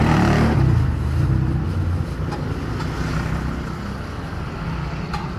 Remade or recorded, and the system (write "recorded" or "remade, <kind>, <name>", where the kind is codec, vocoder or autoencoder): recorded